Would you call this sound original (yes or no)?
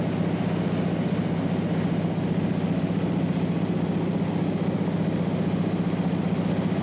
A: yes